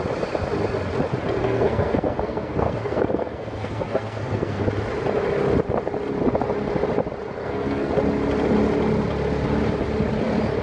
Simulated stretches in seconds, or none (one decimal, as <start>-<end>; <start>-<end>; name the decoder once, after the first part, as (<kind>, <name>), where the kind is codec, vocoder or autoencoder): 1.4-4.6 (codec, SNAC); 7.4-7.9